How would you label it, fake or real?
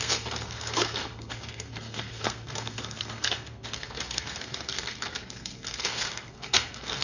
fake